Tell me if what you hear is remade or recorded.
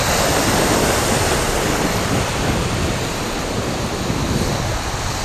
recorded